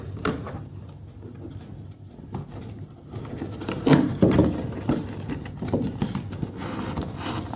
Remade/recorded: recorded